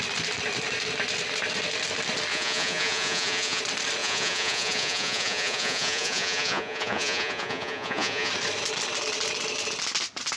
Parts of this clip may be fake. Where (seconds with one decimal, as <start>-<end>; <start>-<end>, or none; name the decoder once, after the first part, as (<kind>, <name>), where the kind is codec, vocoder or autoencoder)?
2.3-3.6 (vocoder, Vocos); 4.0-8.3